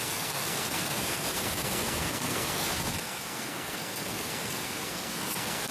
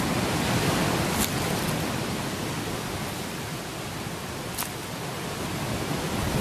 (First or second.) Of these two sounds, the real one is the second